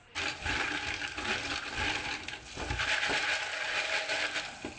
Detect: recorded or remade recorded